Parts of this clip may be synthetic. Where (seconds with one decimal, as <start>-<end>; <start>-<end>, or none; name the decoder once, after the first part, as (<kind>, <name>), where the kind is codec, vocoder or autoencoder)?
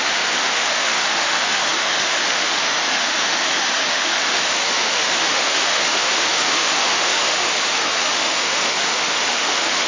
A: 0.0-9.9 (autoencoder, DAC-VAE)